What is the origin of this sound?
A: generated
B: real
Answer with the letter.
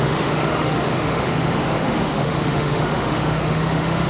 A